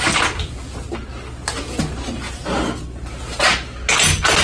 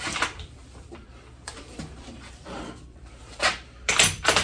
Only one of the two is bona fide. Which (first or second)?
first